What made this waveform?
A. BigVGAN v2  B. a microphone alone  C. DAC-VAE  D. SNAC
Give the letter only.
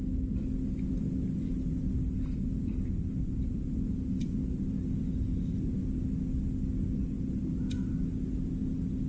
B